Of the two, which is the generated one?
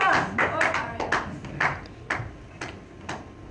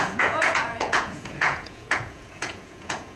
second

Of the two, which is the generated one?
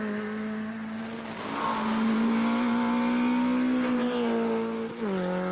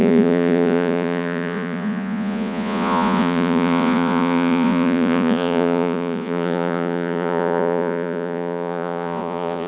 second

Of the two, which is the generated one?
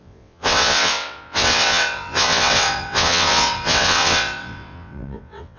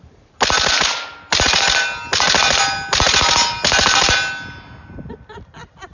first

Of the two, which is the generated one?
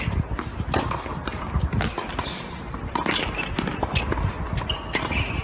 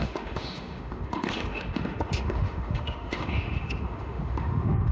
second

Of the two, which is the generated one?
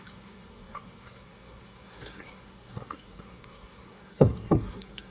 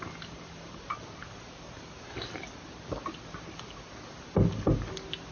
first